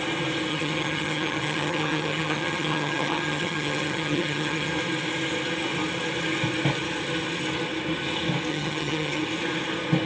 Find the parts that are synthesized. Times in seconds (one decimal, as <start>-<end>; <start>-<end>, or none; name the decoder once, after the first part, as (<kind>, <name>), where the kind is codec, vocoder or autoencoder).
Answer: 0.5-4.7 (vocoder, HiFi-GAN); 8.5-9.2